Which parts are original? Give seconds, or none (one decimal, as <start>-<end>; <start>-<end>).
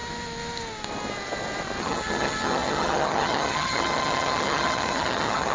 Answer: 0.0-1.8